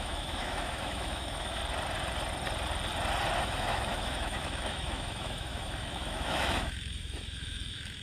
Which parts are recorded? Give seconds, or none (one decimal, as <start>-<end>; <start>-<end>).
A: 1.6-3.4